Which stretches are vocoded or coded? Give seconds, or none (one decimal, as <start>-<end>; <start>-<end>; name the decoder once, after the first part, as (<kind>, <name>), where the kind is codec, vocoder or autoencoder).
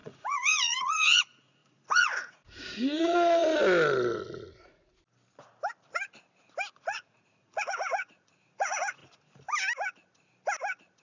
0.0-3.4 (vocoder, Vocos); 6.7-9.0